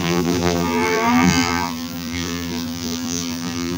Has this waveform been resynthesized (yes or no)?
yes